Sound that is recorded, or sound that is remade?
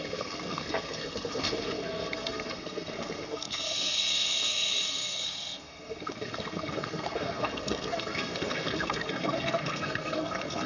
remade